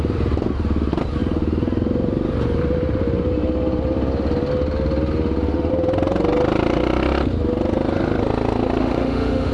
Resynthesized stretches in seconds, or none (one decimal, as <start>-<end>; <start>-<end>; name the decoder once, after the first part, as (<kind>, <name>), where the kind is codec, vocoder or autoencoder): 8.8-9.5 (autoencoder, DAC-VAE)